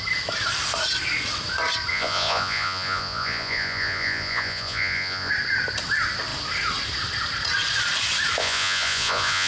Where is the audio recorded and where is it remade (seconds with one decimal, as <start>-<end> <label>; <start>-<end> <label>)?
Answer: 0.0-1.9 recorded; 1.9-5.3 remade; 5.3-8.4 recorded; 8.4-9.5 remade